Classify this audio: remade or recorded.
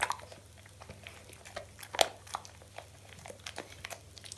recorded